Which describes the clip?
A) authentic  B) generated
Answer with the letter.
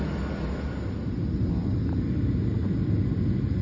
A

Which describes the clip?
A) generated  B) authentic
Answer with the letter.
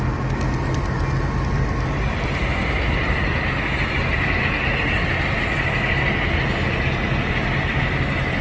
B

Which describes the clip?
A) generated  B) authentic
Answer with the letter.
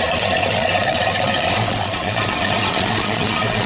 A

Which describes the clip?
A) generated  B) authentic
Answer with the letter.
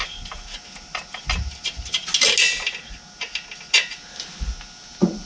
B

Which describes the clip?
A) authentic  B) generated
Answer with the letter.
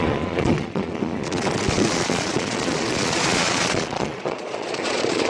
B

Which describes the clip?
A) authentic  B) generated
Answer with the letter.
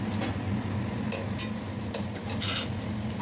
A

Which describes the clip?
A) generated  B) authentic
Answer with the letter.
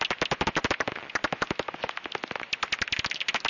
B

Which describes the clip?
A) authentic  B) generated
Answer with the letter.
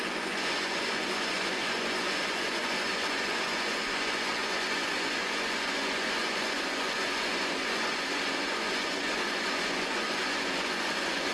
B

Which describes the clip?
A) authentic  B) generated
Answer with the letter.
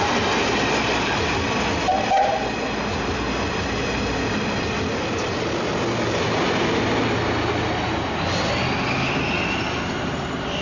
A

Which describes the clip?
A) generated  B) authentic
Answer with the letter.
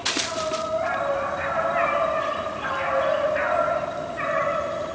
B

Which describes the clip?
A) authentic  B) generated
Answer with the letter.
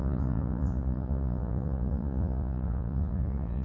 B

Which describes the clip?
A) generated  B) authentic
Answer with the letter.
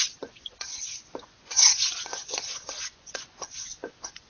A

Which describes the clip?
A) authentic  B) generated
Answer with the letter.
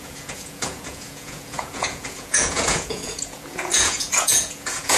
B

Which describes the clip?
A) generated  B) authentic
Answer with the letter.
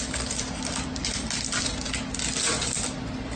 B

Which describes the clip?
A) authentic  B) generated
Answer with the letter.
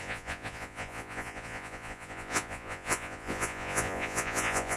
B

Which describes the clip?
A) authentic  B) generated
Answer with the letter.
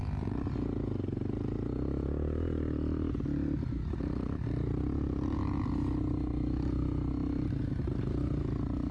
A